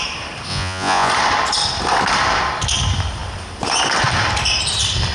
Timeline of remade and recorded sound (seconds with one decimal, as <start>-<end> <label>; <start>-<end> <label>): 0.0-0.5 recorded; 0.5-1.1 remade; 1.1-5.1 recorded